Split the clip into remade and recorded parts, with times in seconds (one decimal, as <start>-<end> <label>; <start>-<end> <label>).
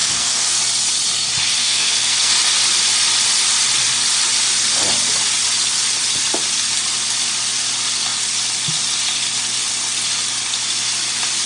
0.0-0.6 remade; 0.6-1.6 recorded; 1.6-2.3 remade; 2.3-11.5 recorded